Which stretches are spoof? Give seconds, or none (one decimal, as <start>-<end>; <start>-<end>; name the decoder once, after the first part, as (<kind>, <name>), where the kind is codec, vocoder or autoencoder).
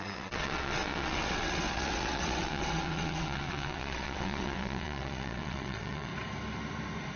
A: 0.0-6.1 (vocoder, WaveNeXt)